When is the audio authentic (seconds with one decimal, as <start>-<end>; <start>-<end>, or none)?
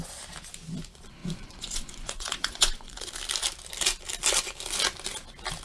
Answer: 0.0-1.2; 3.1-5.6